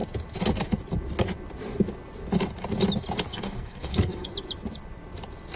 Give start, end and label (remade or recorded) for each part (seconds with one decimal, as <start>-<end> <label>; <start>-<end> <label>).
0.0-3.3 recorded; 3.3-4.3 remade; 4.3-5.6 recorded